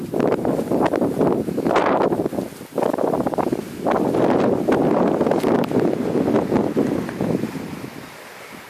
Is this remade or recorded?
recorded